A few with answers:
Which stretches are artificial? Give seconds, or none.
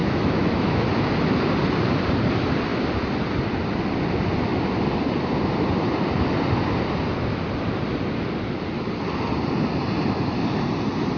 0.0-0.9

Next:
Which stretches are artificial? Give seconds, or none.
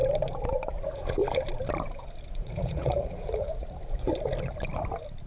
0.7-1.2; 2.3-4.1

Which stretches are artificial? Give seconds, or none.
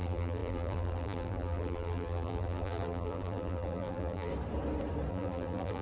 0.0-4.3; 5.1-5.8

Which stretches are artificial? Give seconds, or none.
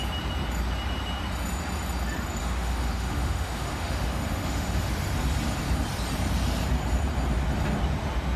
2.4-4.9